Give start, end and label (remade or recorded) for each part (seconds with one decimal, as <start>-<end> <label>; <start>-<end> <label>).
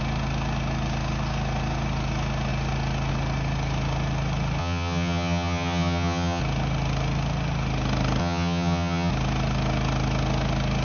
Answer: 0.0-4.6 recorded; 4.6-6.4 remade; 6.4-8.2 recorded; 8.2-9.1 remade; 9.1-10.8 recorded